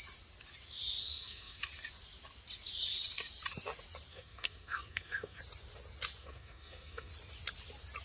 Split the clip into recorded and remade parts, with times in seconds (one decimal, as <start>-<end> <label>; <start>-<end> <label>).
0.0-1.0 recorded; 1.0-1.6 remade; 1.6-4.1 recorded; 4.1-5.4 remade; 5.4-6.2 recorded; 6.2-7.1 remade; 7.1-8.0 recorded